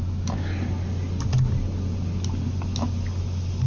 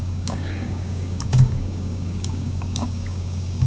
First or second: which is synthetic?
second